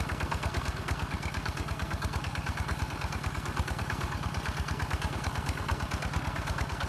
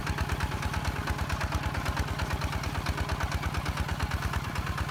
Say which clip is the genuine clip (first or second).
second